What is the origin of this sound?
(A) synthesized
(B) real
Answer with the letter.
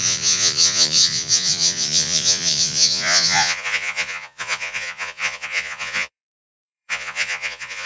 A